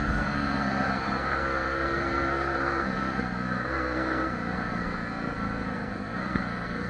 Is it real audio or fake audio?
fake